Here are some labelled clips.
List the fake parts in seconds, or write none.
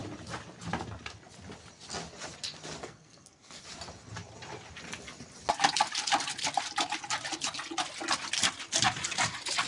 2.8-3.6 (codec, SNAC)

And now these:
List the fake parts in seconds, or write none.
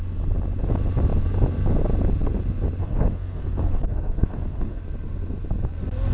2.8-4.8 (codec, SNAC)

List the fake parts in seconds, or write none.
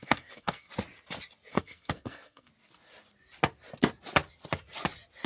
0.0-0.7 (codec, SNAC); 1.5-2.5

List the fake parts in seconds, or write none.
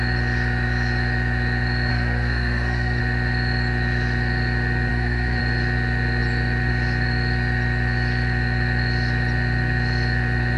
1.9-3.0 (codec, SNAC); 4.9-5.4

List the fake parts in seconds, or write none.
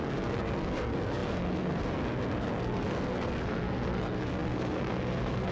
0.0-5.5 (codec, SNAC)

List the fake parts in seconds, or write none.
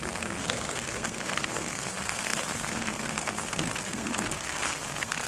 0.0-5.3 (codec, SNAC)